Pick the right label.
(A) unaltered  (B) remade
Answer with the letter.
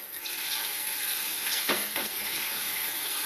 B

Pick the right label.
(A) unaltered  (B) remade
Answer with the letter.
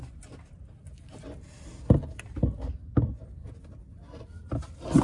A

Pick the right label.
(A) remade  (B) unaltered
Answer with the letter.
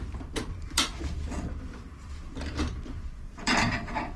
A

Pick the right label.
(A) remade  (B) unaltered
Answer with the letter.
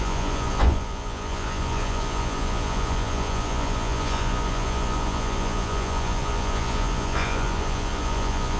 A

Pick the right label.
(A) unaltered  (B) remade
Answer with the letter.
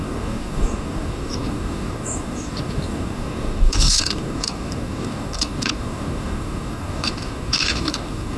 B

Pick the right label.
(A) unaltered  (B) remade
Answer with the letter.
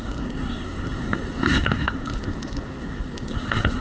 B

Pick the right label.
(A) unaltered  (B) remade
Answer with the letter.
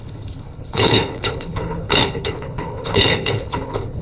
B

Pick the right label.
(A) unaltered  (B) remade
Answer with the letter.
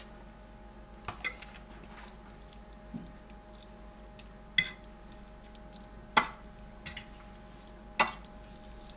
A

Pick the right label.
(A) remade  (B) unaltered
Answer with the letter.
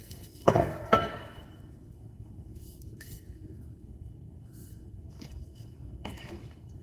A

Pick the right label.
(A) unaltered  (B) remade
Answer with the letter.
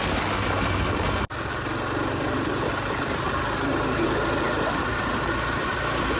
A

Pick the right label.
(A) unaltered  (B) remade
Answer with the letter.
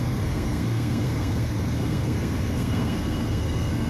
B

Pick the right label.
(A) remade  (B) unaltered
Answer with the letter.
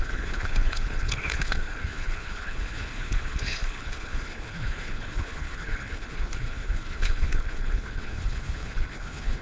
A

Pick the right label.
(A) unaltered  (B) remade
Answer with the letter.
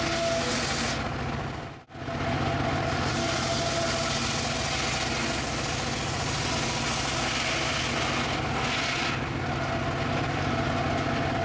A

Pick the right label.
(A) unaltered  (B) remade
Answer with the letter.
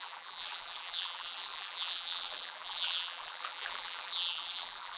B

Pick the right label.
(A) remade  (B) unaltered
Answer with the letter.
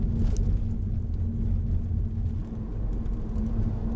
B